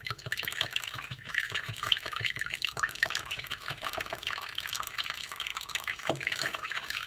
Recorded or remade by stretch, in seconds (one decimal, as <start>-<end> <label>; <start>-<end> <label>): 0.0-7.1 remade

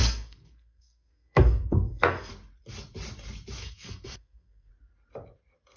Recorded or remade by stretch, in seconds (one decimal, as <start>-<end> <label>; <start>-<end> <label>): 0.0-2.3 remade; 2.3-3.6 recorded; 3.6-4.7 remade; 4.7-5.8 recorded

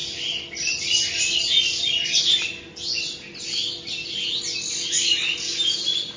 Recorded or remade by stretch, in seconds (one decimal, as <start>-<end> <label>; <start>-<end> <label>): 0.0-6.2 recorded

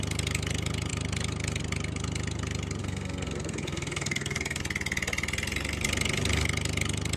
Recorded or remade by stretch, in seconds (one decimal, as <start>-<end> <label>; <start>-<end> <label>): 0.0-2.8 recorded; 2.8-4.6 remade; 4.6-7.2 recorded